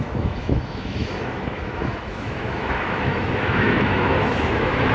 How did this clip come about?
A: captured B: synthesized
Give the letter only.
B